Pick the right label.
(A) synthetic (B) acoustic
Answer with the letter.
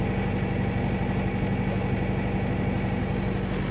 B